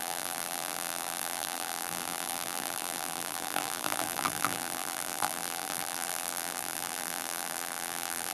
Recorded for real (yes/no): no